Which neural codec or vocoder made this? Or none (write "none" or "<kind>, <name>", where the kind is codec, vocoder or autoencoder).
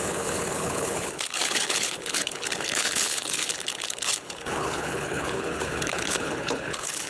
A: codec, HILCodec